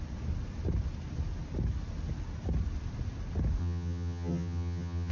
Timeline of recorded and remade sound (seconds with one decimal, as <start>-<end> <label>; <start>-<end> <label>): 0.0-3.6 recorded; 3.6-5.1 remade